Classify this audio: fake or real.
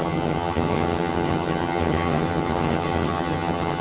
fake